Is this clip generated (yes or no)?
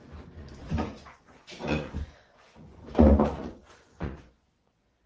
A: yes